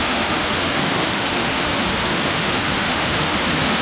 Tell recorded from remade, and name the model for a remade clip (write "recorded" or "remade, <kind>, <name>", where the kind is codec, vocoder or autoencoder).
remade, autoencoder, DAC-VAE